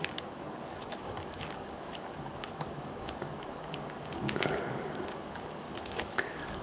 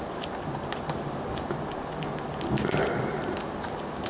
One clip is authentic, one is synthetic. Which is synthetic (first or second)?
first